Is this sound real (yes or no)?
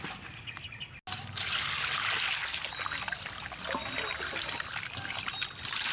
yes